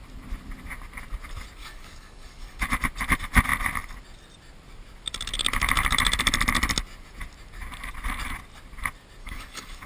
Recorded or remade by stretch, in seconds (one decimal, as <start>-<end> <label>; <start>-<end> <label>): 0.0-1.6 recorded; 1.6-2.6 remade; 2.6-9.2 recorded; 9.2-9.9 remade

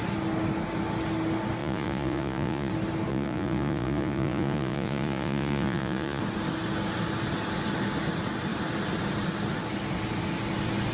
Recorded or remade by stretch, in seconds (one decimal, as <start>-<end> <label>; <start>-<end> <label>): 0.0-1.6 recorded; 1.6-2.7 remade; 2.7-3.1 recorded; 3.1-6.2 remade; 6.2-10.9 recorded

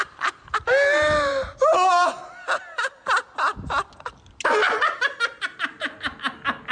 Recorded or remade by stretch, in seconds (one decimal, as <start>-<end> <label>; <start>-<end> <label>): 0.0-0.7 remade; 0.7-1.7 recorded; 1.7-2.3 remade; 2.3-6.7 recorded